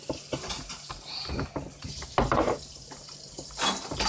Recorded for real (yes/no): yes